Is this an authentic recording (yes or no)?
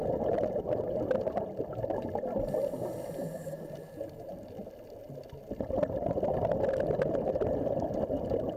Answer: yes